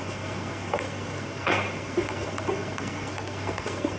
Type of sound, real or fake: fake